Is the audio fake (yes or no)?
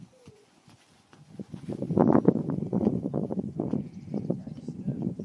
yes